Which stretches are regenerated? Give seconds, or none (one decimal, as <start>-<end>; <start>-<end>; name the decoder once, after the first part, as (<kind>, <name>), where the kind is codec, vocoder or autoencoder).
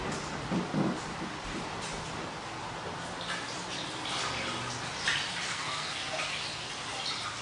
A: 5.5-6.2 (codec, SNAC)